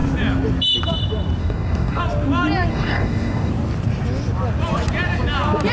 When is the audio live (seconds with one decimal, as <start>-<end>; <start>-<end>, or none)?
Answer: 0.0-1.4; 2.0-2.7; 3.5-5.7